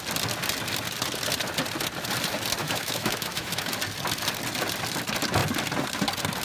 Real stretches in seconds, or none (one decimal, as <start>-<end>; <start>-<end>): 0.0-2.6; 3.7-6.4